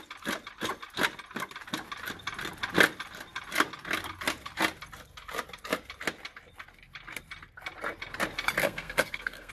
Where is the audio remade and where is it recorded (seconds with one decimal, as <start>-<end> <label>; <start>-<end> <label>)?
0.0-8.6 recorded; 8.6-9.5 remade